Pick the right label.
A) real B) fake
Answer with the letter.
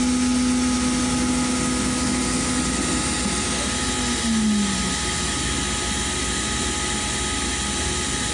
A